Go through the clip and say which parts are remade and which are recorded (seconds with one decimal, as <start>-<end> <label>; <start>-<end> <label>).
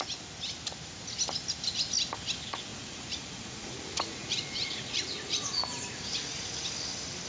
0.0-2.7 recorded; 2.7-5.6 remade; 5.6-7.3 recorded